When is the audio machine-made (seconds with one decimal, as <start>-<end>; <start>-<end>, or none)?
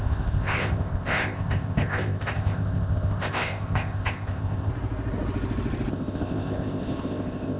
0.0-4.7; 5.9-7.6